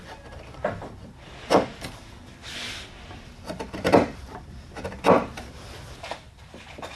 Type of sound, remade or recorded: remade